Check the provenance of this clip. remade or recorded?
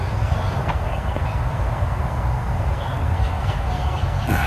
remade